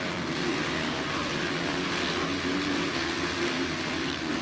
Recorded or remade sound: recorded